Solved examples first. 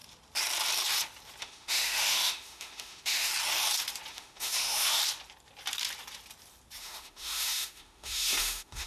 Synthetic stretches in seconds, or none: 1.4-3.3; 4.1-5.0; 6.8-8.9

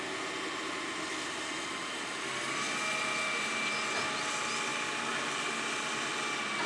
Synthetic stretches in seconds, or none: none

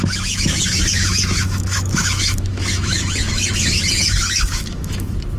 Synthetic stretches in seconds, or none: 0.0-5.4

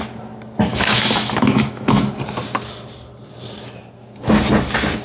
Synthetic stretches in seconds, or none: 0.7-2.0

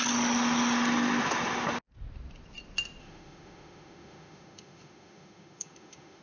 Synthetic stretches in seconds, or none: 3.0-6.2

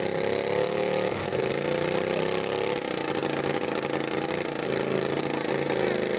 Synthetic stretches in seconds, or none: 0.6-1.5